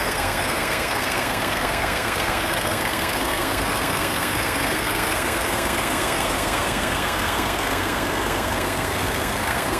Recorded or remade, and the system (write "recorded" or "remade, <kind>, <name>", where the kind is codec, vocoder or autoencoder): remade, codec, SNAC